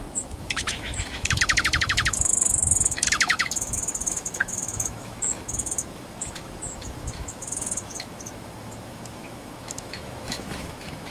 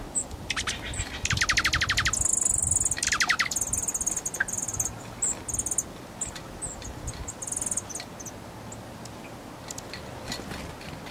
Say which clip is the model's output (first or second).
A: first